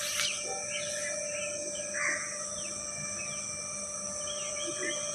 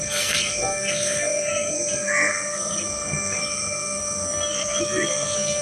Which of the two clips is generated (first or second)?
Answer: second